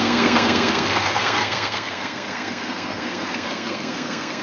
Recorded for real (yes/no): no